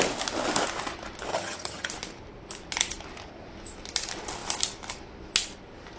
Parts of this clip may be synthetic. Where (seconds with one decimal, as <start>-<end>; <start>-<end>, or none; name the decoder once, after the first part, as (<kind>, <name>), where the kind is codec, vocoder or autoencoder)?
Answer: 1.3-1.9 (vocoder, HiFi-GAN)